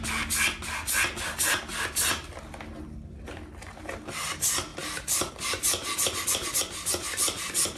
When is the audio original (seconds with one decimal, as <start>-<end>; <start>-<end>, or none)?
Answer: 0.0-7.8